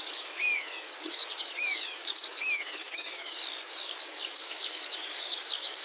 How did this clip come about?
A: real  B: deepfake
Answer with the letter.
B